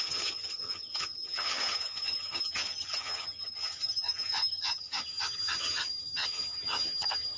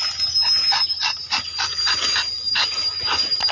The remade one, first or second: first